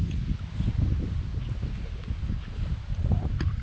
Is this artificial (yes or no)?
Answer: no